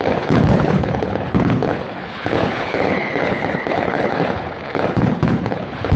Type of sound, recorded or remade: remade